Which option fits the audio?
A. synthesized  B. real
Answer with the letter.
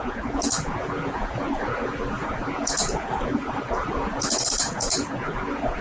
A